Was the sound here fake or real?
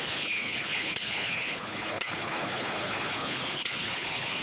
fake